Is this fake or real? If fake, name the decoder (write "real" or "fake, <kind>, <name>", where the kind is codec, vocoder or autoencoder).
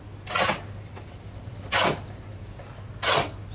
real